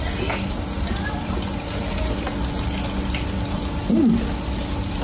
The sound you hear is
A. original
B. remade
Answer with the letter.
A